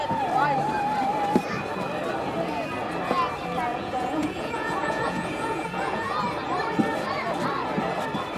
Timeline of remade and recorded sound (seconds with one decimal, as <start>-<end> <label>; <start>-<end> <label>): 0.0-3.7 recorded; 3.7-6.2 remade; 6.2-8.4 recorded